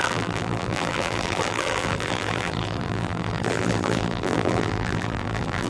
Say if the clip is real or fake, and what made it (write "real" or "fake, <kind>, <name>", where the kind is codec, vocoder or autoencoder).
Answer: fake, vocoder, BigVGAN v2